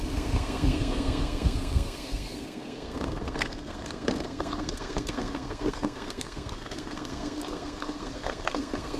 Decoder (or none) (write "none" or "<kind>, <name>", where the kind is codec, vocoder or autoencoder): codec, SNAC